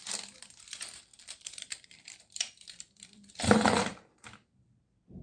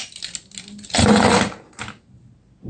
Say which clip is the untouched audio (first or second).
second